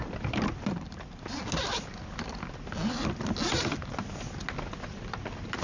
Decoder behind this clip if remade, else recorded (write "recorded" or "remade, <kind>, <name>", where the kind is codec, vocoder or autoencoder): recorded